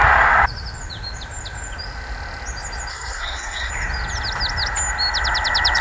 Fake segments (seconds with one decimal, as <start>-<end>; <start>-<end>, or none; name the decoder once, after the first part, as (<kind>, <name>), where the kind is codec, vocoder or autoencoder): 2.9-3.7 (codec, SNAC)